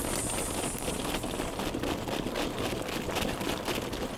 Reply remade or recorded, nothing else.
recorded